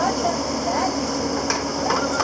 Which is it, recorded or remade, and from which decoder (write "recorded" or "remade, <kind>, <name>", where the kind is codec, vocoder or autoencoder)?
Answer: recorded